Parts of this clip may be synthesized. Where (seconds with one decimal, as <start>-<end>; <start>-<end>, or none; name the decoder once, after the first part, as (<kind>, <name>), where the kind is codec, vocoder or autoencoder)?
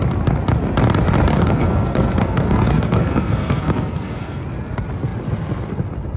1.3-4.4 (codec, SNAC)